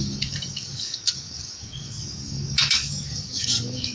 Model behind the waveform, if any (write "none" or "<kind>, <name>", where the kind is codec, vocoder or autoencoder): codec, DAC